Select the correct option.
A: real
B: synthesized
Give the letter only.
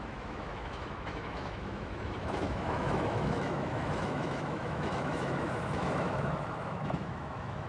B